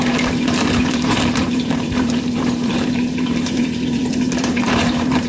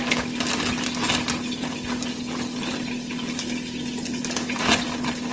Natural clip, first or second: second